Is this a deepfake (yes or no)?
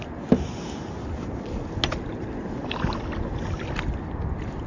no